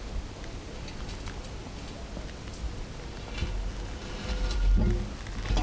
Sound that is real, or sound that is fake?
real